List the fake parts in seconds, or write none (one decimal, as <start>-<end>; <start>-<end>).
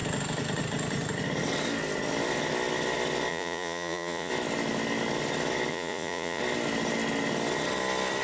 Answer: 3.3-4.3; 5.7-6.4